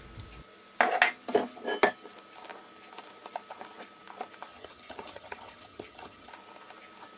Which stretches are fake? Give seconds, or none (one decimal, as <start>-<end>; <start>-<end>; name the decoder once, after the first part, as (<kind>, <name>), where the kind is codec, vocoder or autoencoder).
4.5-6.3 (vocoder, HiFi-GAN)